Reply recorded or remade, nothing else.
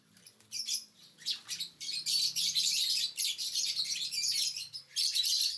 remade